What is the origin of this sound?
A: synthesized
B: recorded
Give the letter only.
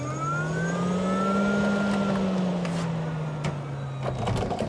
B